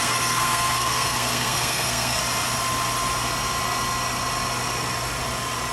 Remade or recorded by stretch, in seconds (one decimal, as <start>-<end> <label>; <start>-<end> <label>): 0.0-2.2 remade; 2.2-5.7 recorded